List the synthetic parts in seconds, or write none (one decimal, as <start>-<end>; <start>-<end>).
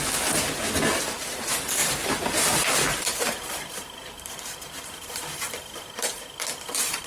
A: 1.8-3.4